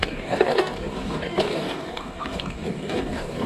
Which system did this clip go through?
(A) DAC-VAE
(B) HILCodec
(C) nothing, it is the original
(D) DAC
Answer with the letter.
D